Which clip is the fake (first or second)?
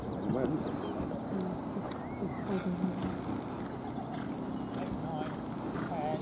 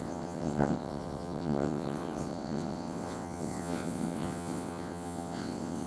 second